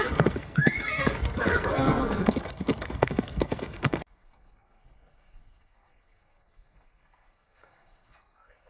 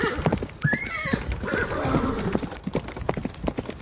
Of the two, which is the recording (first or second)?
second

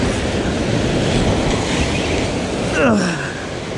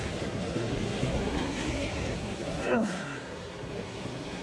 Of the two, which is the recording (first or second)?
first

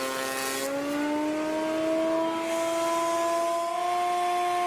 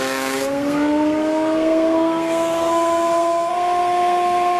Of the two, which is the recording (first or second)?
first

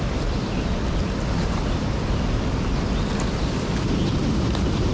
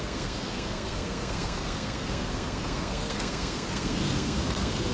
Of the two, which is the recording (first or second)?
first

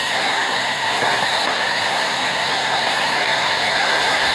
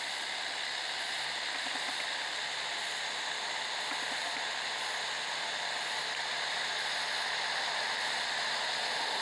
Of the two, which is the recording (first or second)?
second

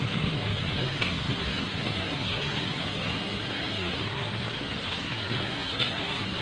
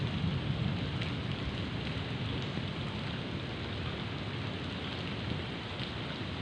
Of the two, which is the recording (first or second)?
second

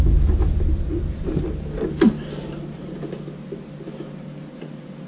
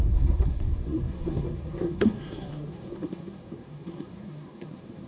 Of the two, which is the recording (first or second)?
first